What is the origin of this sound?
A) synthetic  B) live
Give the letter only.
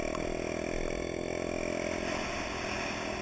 B